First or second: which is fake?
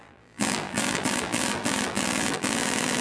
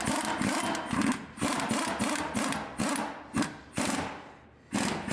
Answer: first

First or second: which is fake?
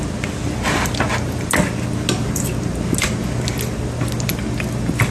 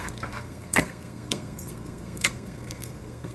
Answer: second